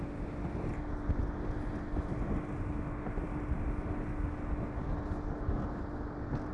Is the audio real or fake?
real